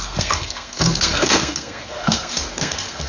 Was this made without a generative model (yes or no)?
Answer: no